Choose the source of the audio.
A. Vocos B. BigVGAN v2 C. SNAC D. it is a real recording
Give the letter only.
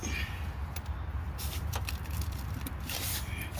D